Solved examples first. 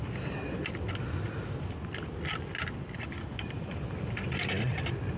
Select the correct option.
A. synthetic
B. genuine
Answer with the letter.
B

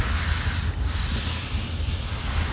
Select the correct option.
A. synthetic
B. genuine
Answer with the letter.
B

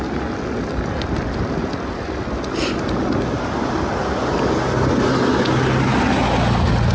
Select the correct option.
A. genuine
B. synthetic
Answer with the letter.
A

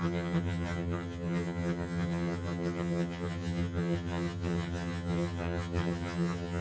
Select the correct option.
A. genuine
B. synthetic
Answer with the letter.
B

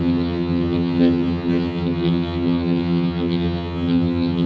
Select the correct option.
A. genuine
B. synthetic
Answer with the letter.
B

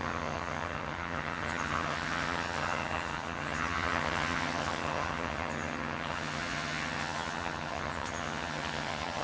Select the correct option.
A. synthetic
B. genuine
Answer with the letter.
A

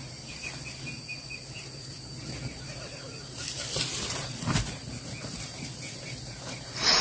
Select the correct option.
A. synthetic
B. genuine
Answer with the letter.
B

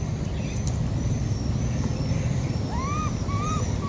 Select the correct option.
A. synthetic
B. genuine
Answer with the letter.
B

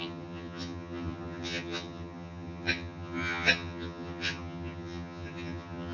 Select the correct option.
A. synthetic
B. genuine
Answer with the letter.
A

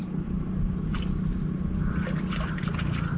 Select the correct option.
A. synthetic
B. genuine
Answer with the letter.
B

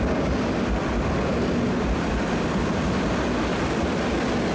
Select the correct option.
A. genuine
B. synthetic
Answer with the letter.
A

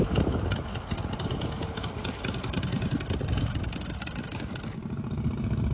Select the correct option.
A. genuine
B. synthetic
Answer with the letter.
A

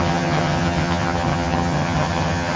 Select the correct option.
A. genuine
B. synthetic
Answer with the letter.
B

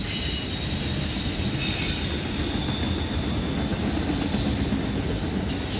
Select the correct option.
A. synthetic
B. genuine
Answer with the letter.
B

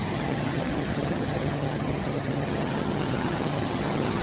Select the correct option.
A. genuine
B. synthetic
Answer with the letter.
B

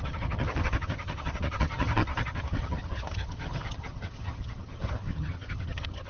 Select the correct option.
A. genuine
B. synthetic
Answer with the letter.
B